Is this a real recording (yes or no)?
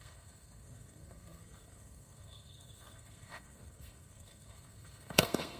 no